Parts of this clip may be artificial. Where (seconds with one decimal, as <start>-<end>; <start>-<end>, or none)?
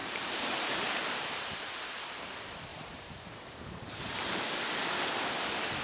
0.0-1.5; 2.7-4.4